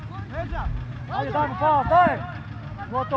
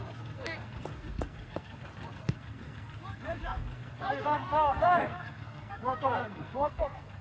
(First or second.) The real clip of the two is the first